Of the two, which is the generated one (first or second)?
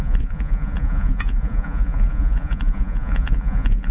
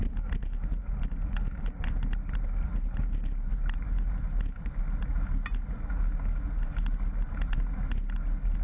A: first